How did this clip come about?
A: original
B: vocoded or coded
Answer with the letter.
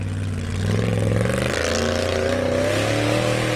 A